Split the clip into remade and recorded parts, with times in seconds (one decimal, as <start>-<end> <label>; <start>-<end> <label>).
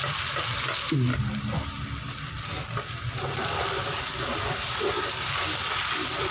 0.0-6.3 recorded